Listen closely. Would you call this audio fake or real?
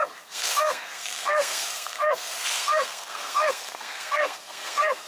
fake